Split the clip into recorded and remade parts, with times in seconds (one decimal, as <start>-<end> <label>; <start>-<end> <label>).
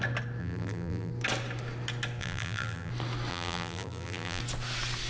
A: 0.0-0.4 recorded; 0.4-1.1 remade; 1.1-2.2 recorded; 2.2-2.9 remade; 2.9-3.3 recorded; 3.3-4.4 remade; 4.4-5.1 recorded